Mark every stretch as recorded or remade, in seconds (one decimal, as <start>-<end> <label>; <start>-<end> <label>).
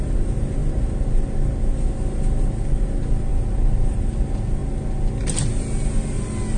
0.0-6.6 recorded